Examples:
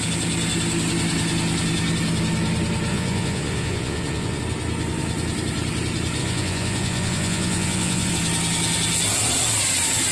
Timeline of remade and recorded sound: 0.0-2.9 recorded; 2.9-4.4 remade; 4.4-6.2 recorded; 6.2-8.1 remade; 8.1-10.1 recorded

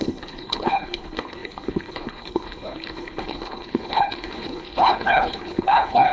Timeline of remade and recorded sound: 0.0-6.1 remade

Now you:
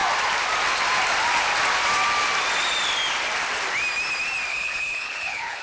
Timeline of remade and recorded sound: 0.0-4.5 recorded; 4.5-5.6 remade

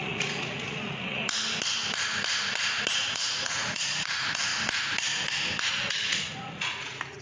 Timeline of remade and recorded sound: 0.0-1.2 remade; 1.2-2.9 recorded; 2.9-4.5 remade; 4.5-5.7 recorded; 5.7-7.2 remade